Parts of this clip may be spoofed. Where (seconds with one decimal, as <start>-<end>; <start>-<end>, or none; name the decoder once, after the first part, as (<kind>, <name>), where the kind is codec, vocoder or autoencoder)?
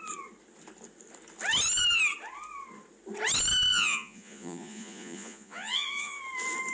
3.7-6.2 (vocoder, Vocos)